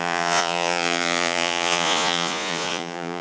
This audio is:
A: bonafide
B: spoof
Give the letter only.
B